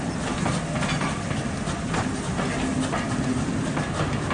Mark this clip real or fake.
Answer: real